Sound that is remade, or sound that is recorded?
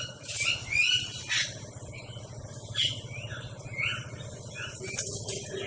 recorded